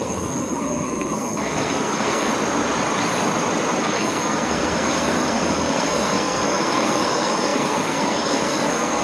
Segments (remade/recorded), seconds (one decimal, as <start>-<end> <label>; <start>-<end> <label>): 0.0-2.3 remade; 2.3-3.8 recorded; 3.8-9.0 remade